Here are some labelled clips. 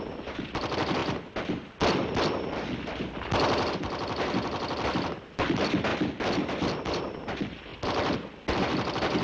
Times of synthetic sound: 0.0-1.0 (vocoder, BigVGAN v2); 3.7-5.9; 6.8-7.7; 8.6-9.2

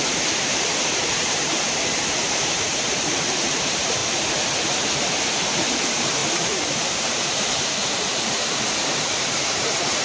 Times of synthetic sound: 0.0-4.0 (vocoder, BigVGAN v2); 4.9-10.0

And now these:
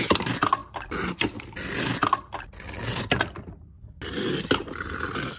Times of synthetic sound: none